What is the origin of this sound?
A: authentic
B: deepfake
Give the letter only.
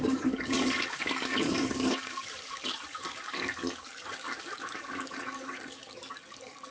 B